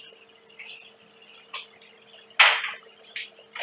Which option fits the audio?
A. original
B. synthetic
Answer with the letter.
A